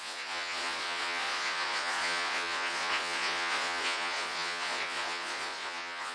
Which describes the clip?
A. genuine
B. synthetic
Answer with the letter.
B